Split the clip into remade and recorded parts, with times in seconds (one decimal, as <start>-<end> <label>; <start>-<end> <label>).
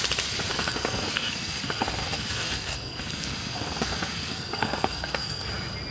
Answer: 0.0-0.5 recorded; 0.5-1.6 remade; 1.6-2.0 recorded; 2.0-5.5 remade; 5.5-5.9 recorded